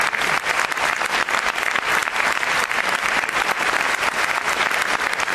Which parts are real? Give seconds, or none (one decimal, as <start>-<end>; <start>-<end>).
none